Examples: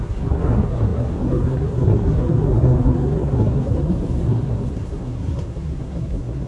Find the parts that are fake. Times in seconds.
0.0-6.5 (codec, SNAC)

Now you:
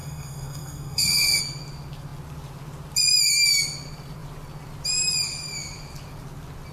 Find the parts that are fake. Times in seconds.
0.0-1.4 (codec, DAC)

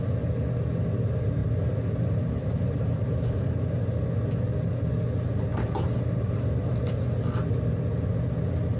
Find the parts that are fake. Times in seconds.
1.4-4.0 (vocoder, BigVGAN v2); 5.5-6.9

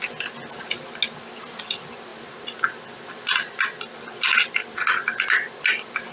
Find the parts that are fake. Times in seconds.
none

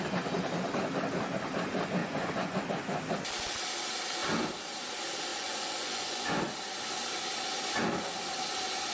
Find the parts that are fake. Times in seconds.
2.0-2.6 (vocoder, Vocos); 5.3-6.4